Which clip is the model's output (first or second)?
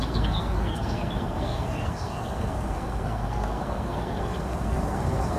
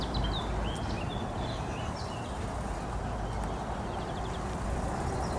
first